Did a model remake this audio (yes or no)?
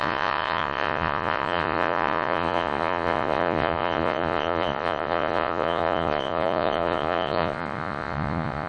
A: yes